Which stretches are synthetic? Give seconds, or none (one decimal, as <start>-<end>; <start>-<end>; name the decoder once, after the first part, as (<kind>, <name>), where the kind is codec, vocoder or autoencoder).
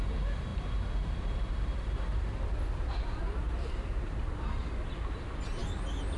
0.5-4.2 (vocoder, BigVGAN v2)